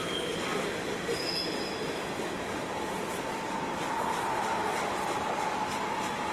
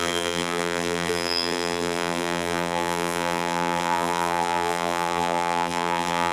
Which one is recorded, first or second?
first